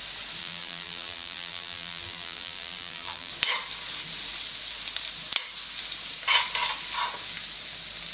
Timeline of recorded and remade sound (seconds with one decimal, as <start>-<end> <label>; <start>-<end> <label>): 0.0-0.4 recorded; 0.4-3.3 remade; 3.3-8.1 recorded